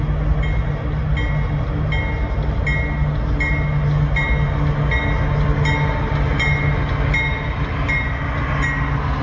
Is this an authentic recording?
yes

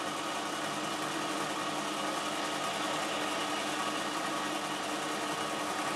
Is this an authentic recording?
yes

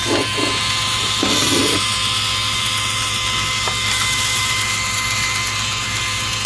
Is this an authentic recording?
yes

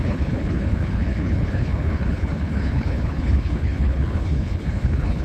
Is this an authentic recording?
no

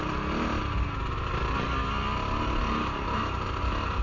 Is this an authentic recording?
yes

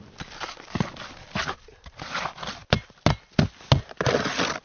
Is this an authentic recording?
yes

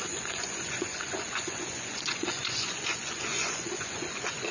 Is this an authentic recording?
no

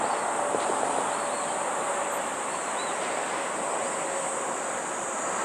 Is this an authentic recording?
yes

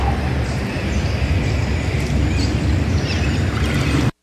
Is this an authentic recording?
yes